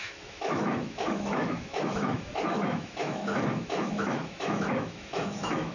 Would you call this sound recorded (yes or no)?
no